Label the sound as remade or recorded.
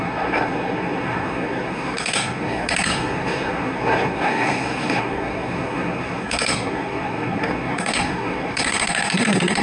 remade